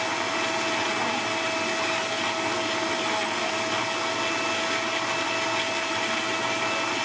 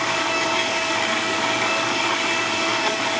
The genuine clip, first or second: first